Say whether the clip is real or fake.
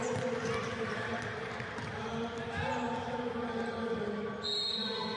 real